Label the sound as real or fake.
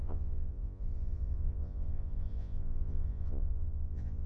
fake